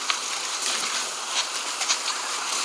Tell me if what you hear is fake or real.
real